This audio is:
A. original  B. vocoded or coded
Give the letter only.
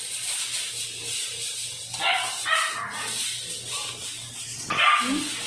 A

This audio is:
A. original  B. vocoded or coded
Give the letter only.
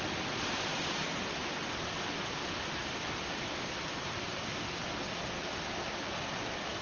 A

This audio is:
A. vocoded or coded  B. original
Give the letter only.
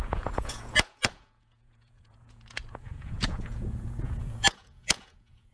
A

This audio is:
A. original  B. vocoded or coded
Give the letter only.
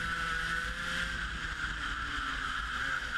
A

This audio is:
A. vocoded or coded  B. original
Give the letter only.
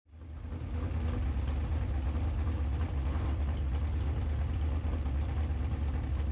B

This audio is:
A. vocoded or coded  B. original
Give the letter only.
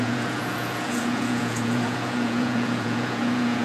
A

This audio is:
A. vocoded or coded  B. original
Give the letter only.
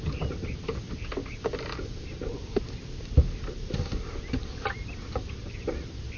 B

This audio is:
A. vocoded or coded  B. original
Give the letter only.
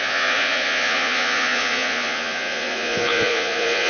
A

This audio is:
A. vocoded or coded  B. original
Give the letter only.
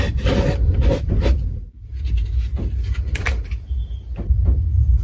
B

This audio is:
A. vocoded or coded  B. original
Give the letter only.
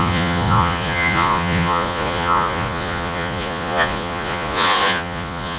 A